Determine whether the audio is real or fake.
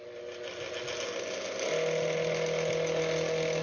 real